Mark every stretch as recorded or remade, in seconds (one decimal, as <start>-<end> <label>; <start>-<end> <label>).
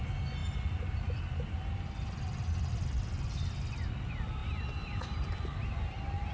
0.0-0.4 recorded; 0.4-2.7 remade; 2.7-6.3 recorded